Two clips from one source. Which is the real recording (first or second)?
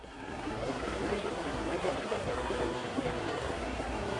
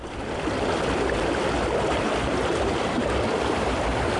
second